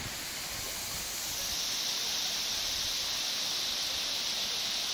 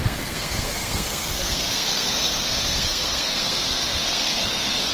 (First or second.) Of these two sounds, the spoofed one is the second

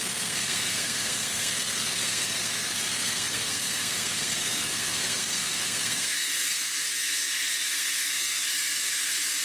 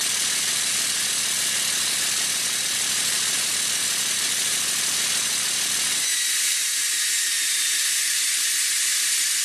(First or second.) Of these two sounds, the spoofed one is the first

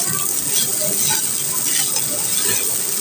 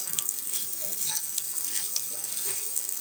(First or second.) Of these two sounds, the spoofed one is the second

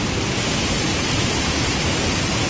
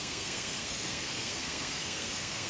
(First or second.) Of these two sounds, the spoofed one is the second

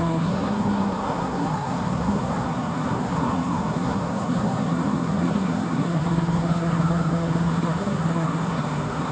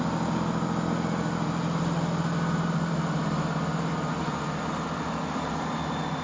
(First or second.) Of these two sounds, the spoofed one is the first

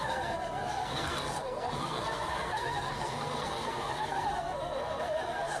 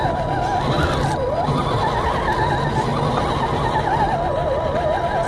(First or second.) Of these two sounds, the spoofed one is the first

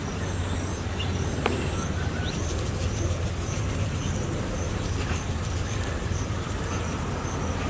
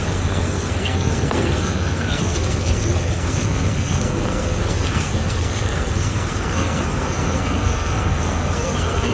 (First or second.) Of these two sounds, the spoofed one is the second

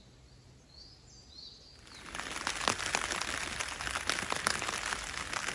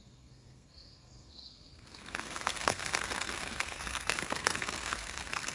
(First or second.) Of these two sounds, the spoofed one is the second